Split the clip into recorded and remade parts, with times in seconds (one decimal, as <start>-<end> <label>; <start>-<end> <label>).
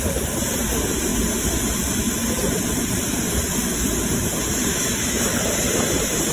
0.0-4.7 recorded; 4.7-5.3 remade; 5.3-6.3 recorded